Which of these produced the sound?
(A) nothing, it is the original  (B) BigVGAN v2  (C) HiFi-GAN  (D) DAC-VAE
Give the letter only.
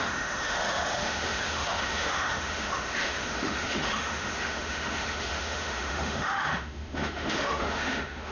D